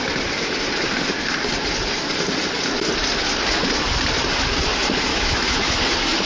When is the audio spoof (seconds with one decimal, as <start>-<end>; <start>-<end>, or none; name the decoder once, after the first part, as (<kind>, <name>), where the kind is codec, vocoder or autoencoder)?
5.1-5.8 (autoencoder, DAC-VAE)